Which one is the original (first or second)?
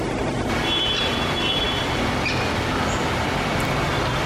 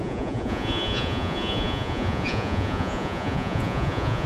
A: first